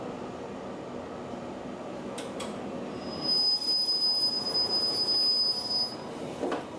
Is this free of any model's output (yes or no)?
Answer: yes